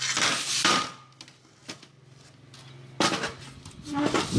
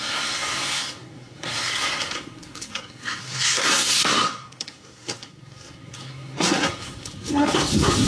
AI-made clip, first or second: second